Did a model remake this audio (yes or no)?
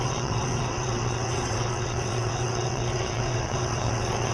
yes